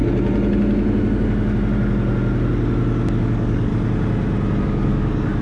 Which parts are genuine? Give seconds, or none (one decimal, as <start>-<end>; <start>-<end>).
0.0-3.2; 3.7-4.6